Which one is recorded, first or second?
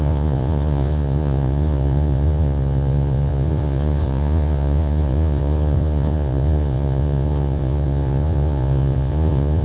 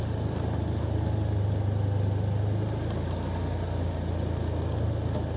second